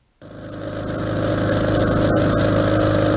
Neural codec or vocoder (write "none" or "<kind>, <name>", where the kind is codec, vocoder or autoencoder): none